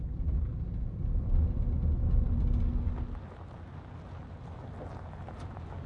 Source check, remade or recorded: recorded